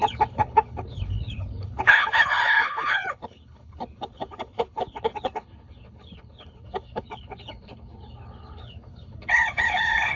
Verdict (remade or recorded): remade